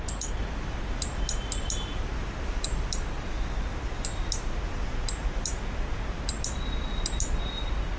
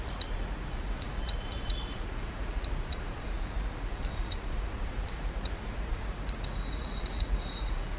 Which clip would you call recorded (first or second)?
first